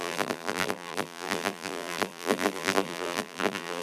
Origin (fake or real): fake